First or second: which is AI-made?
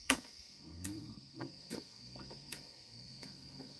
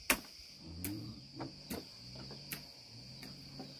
first